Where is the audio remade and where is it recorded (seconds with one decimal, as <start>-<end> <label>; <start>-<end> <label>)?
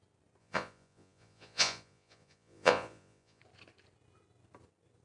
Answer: 0.0-0.4 recorded; 0.4-3.4 remade; 3.4-5.0 recorded